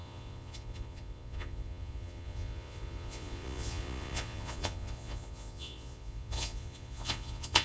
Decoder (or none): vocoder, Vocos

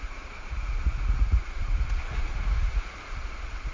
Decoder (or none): vocoder, Vocos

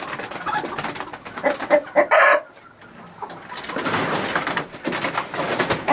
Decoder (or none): none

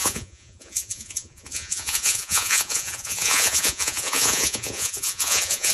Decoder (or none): vocoder, Vocos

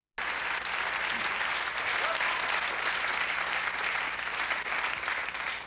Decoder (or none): none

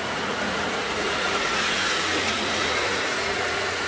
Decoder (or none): vocoder, Vocos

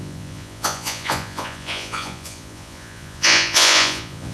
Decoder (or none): vocoder, Vocos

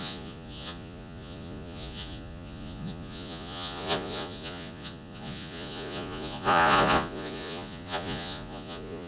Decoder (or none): vocoder, Vocos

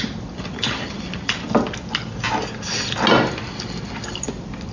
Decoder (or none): none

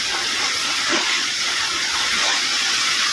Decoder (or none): vocoder, Vocos